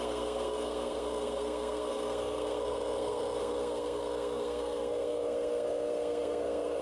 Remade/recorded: remade